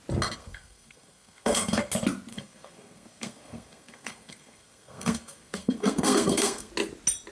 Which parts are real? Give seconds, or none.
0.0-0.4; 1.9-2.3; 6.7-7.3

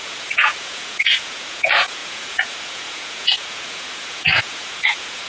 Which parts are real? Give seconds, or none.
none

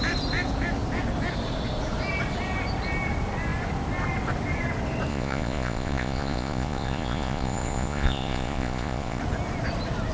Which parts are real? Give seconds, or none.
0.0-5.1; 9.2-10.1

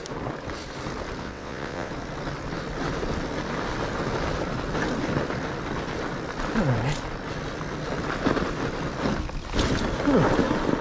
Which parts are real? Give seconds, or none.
0.0-1.2; 1.9-10.8